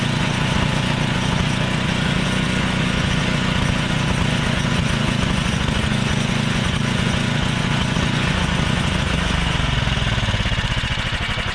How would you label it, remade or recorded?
remade